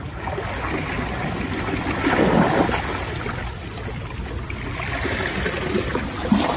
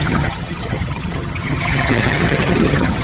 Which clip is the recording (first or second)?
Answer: first